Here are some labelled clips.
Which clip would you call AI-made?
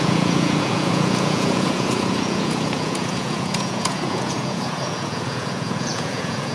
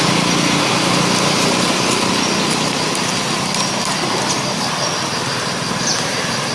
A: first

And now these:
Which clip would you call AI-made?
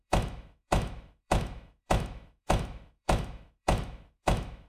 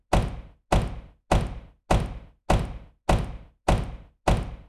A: first